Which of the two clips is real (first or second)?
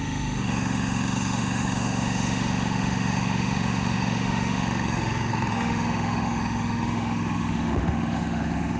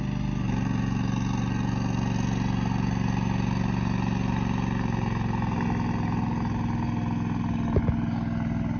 second